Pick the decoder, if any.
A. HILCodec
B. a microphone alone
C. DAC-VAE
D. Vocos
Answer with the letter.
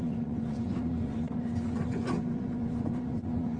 D